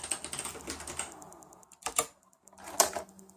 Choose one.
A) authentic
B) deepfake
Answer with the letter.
A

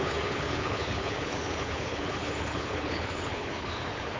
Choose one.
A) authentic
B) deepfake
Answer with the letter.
B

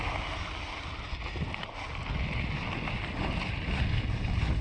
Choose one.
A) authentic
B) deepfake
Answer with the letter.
A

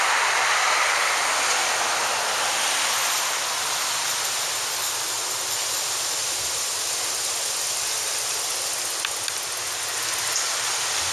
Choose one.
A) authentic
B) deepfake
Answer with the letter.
A